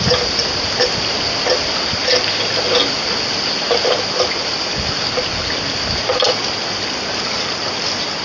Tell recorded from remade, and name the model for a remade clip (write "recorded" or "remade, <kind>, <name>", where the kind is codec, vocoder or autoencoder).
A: recorded